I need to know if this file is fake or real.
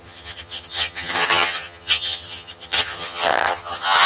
fake